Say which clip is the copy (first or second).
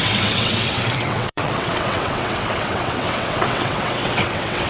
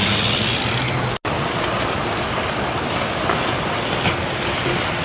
first